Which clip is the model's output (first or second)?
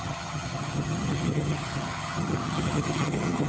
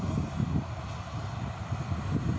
first